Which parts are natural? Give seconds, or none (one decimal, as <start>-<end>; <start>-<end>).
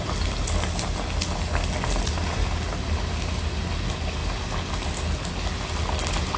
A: 0.0-6.4